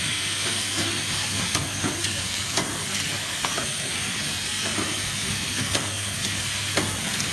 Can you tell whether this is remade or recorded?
remade